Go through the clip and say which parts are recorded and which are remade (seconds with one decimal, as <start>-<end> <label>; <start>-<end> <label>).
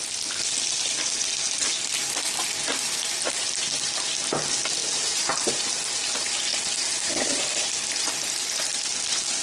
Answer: 0.0-4.8 recorded; 4.8-5.7 remade; 5.7-6.5 recorded; 6.5-7.4 remade; 7.4-8.7 recorded; 8.7-9.4 remade